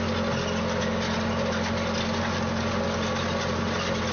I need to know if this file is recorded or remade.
recorded